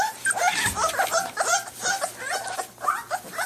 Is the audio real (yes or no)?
yes